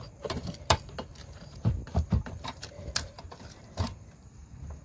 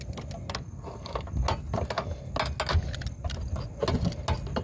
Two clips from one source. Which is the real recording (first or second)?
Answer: second